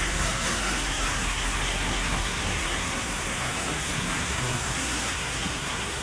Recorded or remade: remade